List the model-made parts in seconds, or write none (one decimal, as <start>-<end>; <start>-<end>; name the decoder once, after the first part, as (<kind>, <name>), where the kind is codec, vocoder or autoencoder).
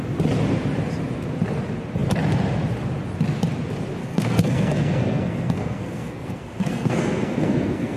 4.0-8.0 (codec, SNAC)